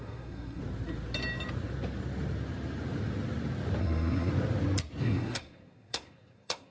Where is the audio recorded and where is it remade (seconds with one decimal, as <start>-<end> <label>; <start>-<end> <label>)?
0.0-0.6 remade; 0.6-3.8 recorded; 3.8-4.3 remade; 4.3-5.0 recorded; 5.0-6.7 remade